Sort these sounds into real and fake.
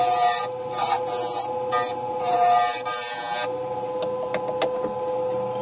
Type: real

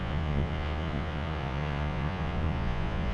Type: fake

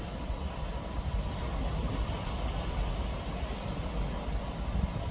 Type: real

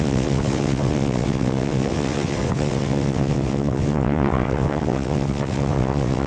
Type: fake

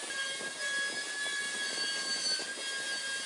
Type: real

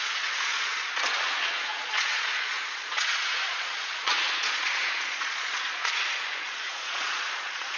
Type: fake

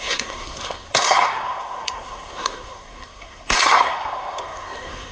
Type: fake